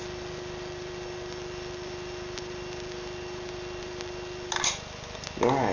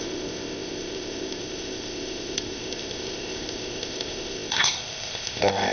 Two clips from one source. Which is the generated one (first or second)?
second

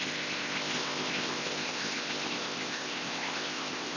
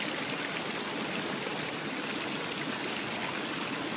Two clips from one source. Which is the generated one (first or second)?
first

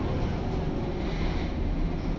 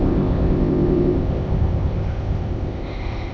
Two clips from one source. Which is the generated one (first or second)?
second